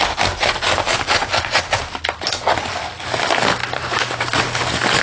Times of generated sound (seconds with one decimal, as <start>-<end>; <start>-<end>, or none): 3.6-4.4